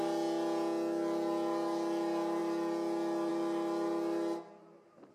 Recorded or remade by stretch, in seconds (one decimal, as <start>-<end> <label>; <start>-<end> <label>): 0.0-5.1 recorded